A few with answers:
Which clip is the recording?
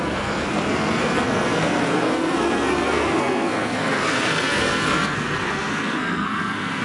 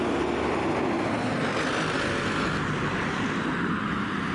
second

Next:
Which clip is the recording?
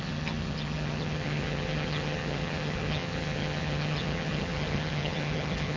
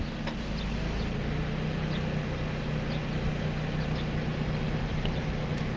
second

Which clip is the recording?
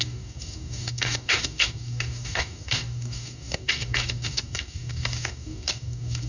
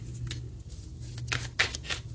second